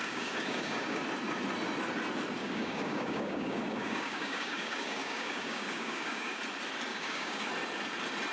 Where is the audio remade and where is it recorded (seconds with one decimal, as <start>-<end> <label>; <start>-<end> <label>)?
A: 0.0-1.0 remade; 1.0-2.4 recorded; 2.4-6.4 remade; 6.4-6.9 recorded; 6.9-7.5 remade; 7.5-8.3 recorded